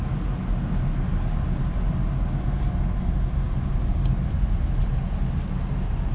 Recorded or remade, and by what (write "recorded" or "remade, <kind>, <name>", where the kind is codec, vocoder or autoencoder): recorded